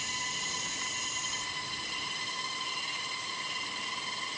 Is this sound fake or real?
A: real